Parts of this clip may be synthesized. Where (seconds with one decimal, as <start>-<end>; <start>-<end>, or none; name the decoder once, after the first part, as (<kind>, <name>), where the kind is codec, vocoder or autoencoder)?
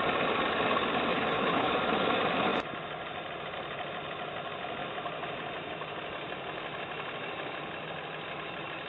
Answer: 1.1-1.7 (codec, HILCodec)